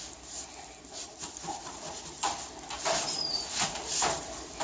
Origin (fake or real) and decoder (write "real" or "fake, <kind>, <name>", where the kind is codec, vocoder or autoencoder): fake, vocoder, BigVGAN v2